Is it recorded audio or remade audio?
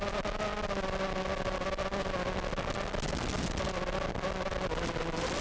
recorded